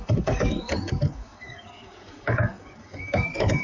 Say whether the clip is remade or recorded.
remade